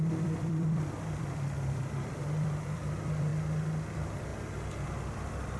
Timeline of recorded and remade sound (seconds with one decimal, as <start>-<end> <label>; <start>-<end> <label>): 0.0-3.3 remade; 3.3-3.9 recorded; 3.9-4.3 remade; 4.3-5.6 recorded